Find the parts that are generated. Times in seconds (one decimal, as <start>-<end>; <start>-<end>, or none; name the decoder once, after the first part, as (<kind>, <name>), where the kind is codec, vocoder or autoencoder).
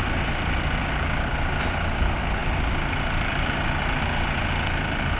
none